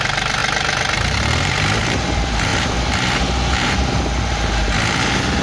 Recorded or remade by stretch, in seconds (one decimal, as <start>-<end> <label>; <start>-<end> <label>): 0.0-0.4 remade; 0.4-1.4 recorded; 1.4-5.4 remade

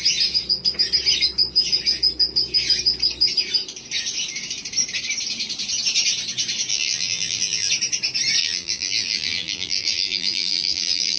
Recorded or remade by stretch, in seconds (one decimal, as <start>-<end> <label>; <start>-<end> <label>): 0.0-6.7 recorded; 6.7-7.7 remade; 7.7-8.4 recorded; 8.4-11.2 remade